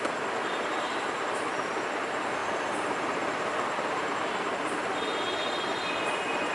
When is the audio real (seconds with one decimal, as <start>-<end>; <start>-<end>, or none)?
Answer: 0.0-0.9; 1.7-2.4